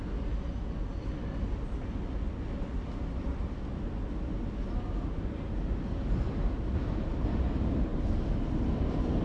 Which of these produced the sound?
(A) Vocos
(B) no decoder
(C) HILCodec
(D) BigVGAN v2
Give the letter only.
B